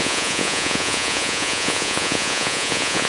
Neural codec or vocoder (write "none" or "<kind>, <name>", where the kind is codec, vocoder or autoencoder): vocoder, Vocos